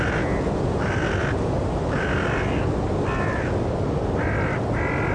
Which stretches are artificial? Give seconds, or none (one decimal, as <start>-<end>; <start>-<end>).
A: none